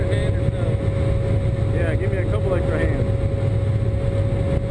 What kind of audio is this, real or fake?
real